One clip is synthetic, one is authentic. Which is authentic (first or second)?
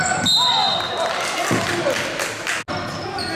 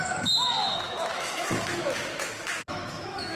first